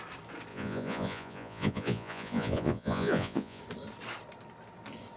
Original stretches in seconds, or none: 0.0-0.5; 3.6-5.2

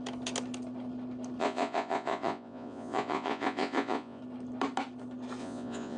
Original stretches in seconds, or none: 0.0-1.4; 4.2-5.4